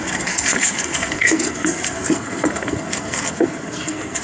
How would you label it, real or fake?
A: fake